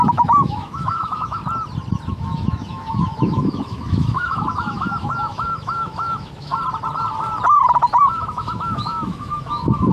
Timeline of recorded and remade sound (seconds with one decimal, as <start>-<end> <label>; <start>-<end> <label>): 0.0-1.4 remade; 1.4-2.1 recorded; 2.1-6.5 remade; 6.5-8.0 recorded; 8.0-9.9 remade